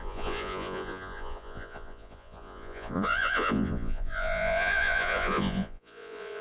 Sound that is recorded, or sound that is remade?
remade